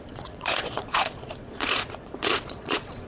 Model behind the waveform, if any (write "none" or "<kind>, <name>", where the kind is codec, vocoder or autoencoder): vocoder, Vocos